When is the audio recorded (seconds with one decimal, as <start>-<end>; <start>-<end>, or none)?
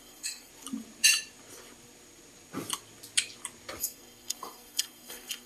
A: 0.5-3.8